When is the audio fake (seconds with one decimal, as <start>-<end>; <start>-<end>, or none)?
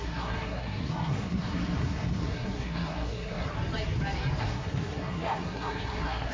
0.0-3.5; 4.4-6.3